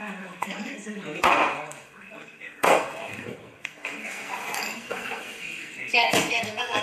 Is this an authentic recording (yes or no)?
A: no